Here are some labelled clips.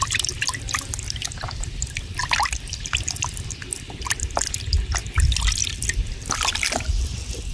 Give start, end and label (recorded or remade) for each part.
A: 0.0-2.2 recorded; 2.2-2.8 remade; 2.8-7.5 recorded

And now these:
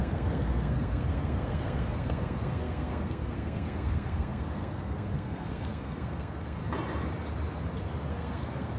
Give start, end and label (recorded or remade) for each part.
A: 0.0-6.6 remade; 6.6-8.1 recorded; 8.1-8.8 remade

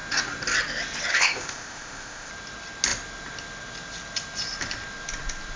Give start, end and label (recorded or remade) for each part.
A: 0.0-1.1 recorded; 1.1-2.3 remade; 2.3-5.6 recorded

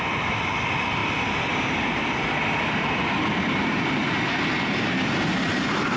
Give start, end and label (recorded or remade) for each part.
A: 0.0-1.0 remade; 1.0-3.4 recorded; 3.4-4.0 remade; 4.0-5.5 recorded; 5.5-6.0 remade